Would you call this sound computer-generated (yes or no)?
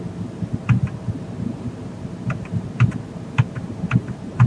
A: yes